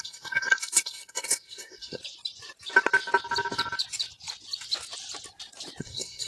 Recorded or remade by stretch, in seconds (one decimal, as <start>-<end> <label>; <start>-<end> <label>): 0.0-2.0 remade; 2.0-5.8 recorded; 5.8-6.3 remade